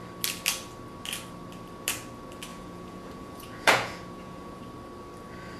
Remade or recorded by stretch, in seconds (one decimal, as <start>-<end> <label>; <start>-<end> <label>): 0.0-2.5 recorded; 2.5-4.6 remade; 4.6-5.6 recorded